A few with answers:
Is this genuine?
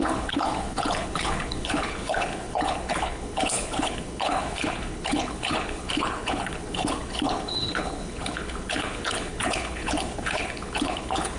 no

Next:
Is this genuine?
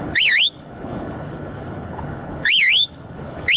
no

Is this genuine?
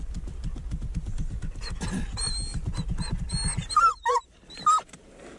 yes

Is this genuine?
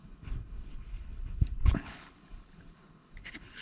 no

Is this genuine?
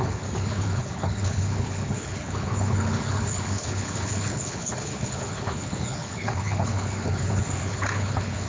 no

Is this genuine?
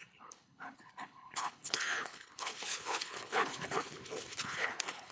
no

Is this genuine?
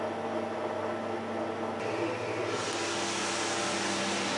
yes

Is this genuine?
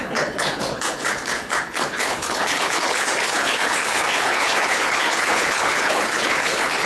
no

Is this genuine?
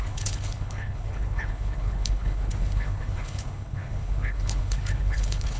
no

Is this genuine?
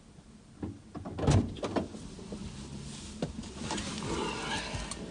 yes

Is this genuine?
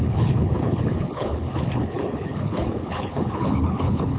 no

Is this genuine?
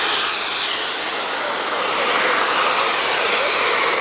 yes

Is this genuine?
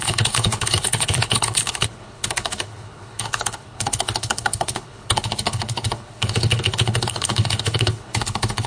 no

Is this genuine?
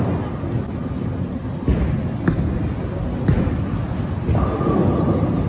yes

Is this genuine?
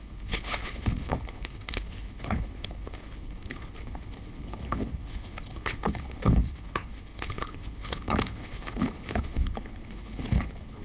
no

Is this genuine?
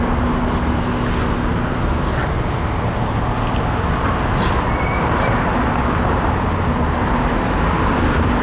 yes